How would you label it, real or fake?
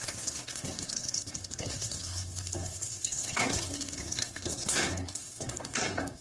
fake